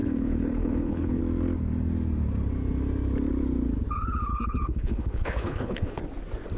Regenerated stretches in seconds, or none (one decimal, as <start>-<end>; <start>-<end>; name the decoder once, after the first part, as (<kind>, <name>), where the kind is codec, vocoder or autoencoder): 0.0-1.2 (codec, HILCodec); 4.3-6.0